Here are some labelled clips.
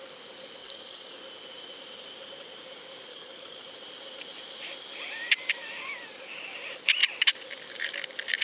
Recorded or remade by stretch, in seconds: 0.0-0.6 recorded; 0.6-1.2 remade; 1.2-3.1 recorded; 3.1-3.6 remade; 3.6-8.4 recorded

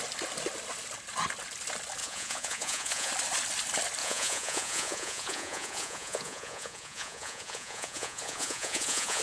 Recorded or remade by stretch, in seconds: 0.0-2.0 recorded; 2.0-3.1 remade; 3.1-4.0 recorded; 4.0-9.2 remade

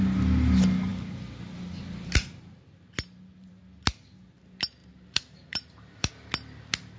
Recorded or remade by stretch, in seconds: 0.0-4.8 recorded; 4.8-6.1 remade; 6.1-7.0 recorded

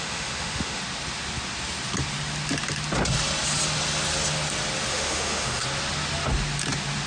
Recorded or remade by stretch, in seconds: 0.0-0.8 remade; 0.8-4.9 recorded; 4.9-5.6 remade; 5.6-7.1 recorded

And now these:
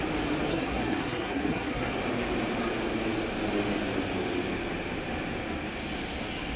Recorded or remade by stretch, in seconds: 0.0-0.5 recorded; 0.5-1.9 remade; 1.9-6.6 recorded

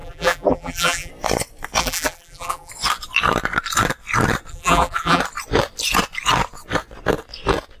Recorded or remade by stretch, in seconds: 0.0-1.1 remade; 1.1-1.8 recorded; 1.8-2.7 remade; 2.7-4.5 recorded; 4.5-5.2 remade; 5.2-7.8 recorded

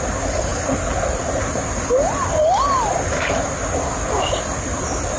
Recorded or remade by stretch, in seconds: 0.0-5.2 recorded